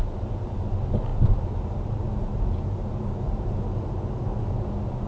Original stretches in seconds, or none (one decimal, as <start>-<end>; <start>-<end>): 0.0-1.1; 3.6-5.1